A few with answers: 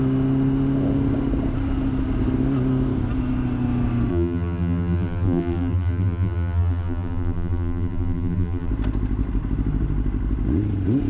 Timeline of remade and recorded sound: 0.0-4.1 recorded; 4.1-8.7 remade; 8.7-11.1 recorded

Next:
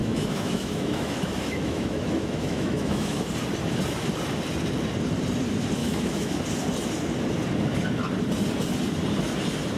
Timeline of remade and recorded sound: 0.0-3.3 remade; 3.3-5.8 recorded; 5.8-6.4 remade; 6.4-9.8 recorded